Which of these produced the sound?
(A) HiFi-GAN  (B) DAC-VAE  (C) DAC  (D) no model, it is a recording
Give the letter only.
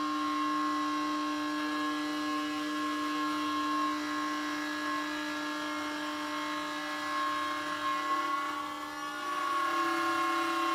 D